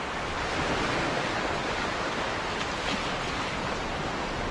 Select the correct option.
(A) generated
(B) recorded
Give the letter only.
B